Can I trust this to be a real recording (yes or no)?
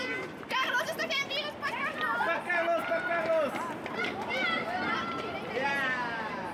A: yes